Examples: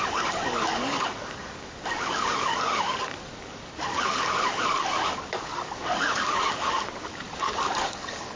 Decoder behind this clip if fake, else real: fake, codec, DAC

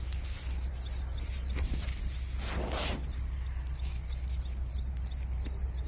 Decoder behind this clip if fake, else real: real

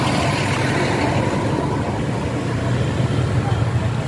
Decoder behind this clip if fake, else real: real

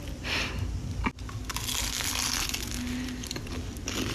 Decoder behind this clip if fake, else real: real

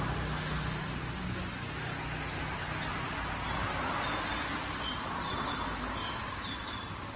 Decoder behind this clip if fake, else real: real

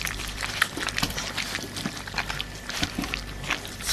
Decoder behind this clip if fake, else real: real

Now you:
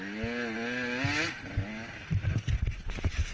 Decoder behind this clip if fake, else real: real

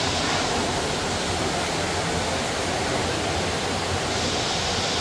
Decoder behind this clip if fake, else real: real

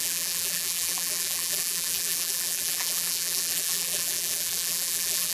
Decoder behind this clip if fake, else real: fake, vocoder, BigVGAN v2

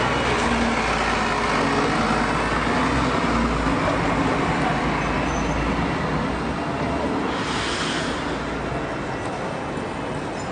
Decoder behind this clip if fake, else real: real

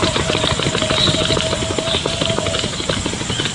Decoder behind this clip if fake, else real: real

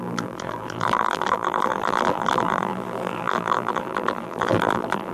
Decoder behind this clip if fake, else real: fake, vocoder, BigVGAN v2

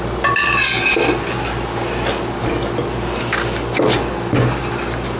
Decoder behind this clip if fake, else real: real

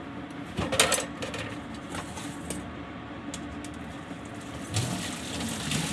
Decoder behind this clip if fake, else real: real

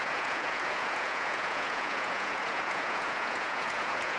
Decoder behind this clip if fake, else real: fake, vocoder, Vocos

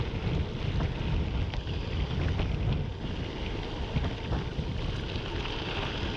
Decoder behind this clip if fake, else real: real